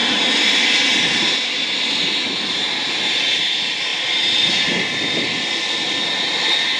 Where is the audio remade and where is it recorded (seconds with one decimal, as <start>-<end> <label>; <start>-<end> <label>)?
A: 0.0-6.8 recorded